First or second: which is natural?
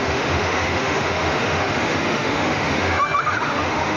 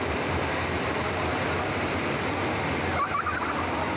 second